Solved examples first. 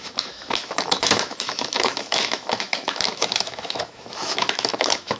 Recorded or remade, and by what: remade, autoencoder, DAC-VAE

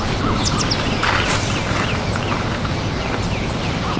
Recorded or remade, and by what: recorded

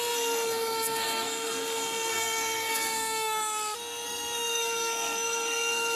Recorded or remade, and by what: remade, codec, SNAC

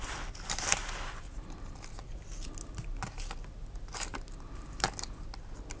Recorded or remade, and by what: recorded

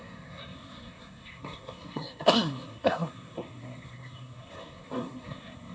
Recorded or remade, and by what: remade, codec, SNAC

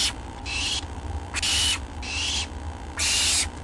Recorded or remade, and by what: recorded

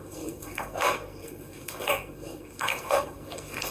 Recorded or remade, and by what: remade, codec, SNAC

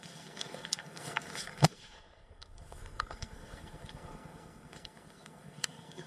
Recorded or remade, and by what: remade, codec, SNAC